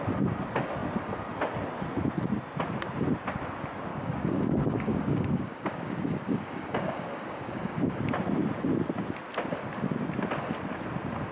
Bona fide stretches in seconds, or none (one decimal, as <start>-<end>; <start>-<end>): 0.0-3.9; 8.0-11.3